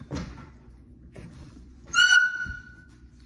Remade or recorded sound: remade